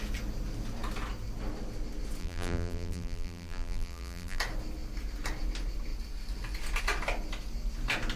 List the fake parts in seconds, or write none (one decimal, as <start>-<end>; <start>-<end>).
2.2-4.4